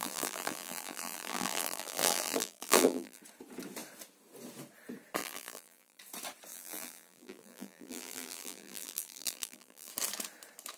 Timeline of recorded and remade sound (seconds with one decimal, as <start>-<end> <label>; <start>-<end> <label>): 0.0-3.2 remade; 3.2-5.2 recorded; 5.2-6.0 remade; 6.0-6.5 recorded; 6.5-9.9 remade; 9.9-10.8 recorded